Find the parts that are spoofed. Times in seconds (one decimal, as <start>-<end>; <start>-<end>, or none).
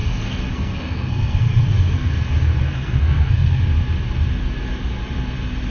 0.0-2.1; 2.6-3.6